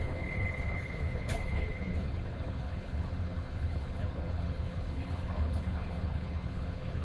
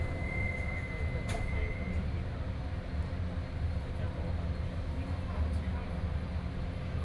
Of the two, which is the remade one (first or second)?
first